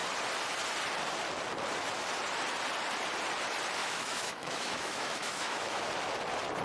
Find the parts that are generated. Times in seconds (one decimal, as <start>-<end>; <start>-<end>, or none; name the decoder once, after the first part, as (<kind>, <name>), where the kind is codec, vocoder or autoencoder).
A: 3.8-5.9 (autoencoder, DAC-VAE)